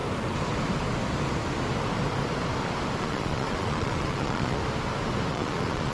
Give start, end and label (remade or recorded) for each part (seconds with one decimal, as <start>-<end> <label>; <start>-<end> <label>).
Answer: 0.0-3.0 recorded; 3.0-4.6 remade; 4.6-5.3 recorded; 5.3-5.9 remade